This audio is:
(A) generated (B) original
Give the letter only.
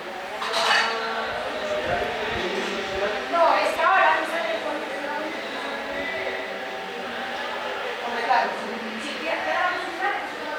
B